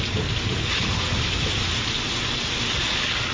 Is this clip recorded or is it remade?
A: recorded